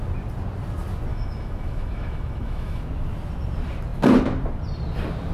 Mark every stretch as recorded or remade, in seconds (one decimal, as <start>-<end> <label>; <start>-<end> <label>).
0.0-1.1 recorded; 1.1-2.8 remade; 2.8-5.3 recorded